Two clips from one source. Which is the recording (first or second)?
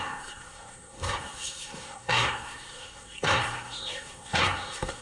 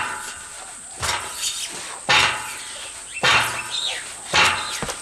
second